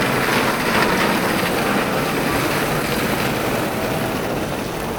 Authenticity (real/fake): real